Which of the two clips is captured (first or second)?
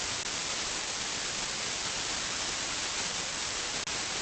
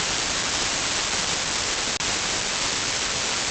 first